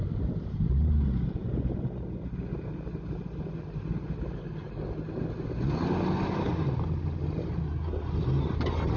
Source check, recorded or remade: recorded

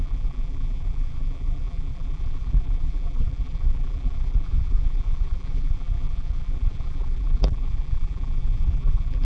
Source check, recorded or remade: remade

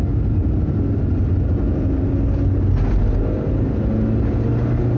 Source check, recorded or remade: recorded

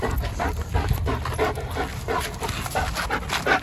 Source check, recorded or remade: recorded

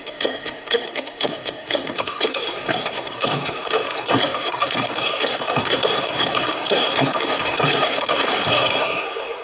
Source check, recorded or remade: remade